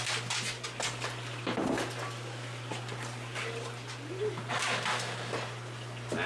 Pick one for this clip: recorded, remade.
recorded